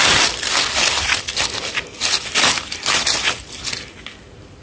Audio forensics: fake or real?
real